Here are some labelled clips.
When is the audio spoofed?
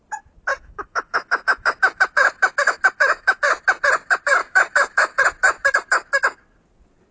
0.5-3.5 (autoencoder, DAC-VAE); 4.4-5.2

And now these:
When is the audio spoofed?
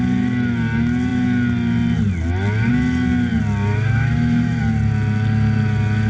3.7-4.6 (autoencoder, DAC-VAE)